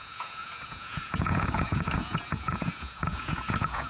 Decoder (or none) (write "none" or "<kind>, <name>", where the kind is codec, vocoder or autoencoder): vocoder, Vocos